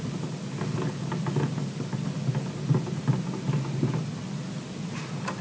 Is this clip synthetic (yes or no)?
no